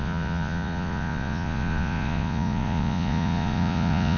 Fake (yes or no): yes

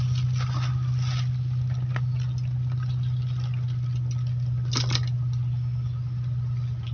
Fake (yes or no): no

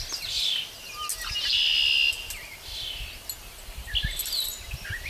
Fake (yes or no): no